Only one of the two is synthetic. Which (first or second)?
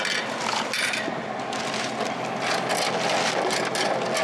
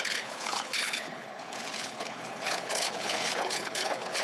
second